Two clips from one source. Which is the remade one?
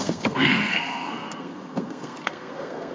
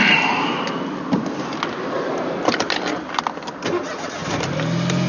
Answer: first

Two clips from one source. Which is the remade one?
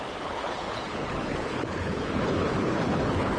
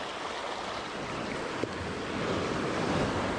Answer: first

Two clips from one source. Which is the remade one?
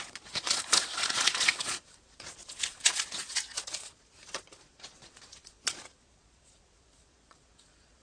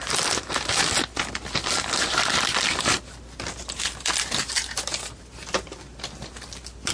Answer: first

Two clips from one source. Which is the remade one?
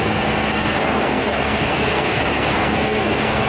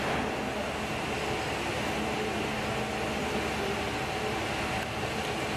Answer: first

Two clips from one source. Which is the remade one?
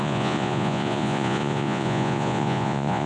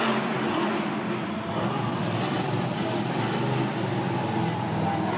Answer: first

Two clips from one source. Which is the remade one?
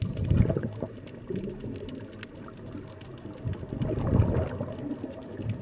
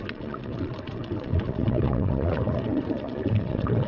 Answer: second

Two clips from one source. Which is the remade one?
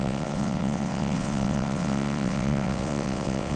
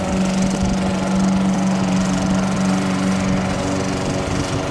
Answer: first